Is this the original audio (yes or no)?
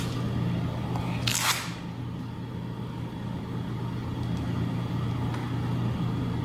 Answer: yes